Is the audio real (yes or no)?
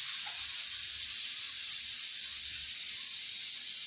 yes